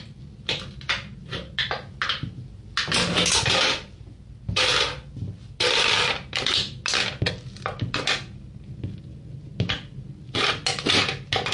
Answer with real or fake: real